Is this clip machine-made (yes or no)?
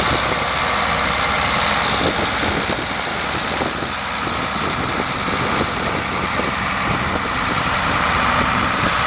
no